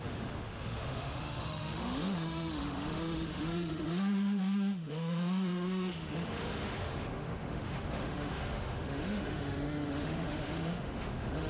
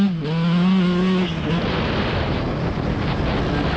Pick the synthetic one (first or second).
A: first